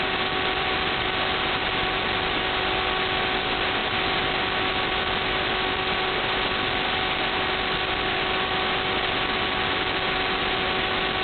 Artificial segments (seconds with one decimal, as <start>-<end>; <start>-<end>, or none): none